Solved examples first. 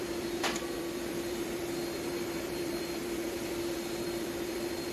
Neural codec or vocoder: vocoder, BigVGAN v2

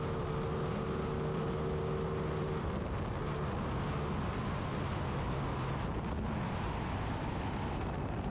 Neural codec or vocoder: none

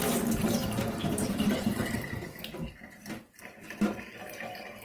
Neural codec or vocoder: vocoder, BigVGAN v2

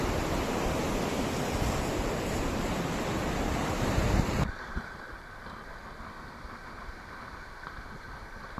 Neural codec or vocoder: none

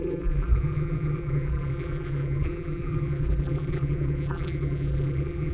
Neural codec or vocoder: vocoder, BigVGAN v2